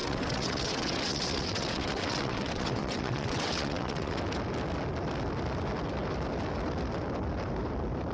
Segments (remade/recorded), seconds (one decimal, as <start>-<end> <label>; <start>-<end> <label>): 0.0-4.2 remade; 4.2-8.1 recorded